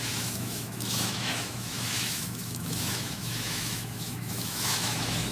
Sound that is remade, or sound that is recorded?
remade